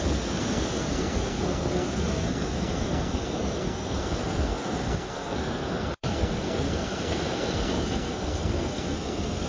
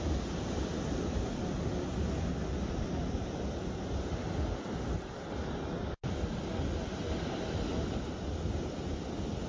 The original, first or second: second